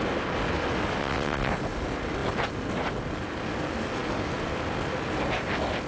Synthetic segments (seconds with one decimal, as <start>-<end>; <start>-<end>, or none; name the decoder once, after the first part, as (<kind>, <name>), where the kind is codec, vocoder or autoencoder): 1.0-1.5 (vocoder, WaveNeXt)